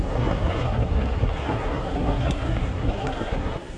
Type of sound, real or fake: fake